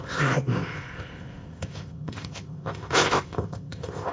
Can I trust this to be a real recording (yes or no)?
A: no